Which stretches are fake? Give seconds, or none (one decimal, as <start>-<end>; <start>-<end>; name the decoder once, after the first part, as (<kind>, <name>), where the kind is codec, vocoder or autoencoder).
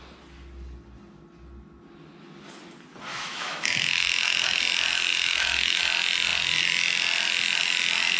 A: 3.1-4.6 (autoencoder, DAC-VAE); 5.1-5.8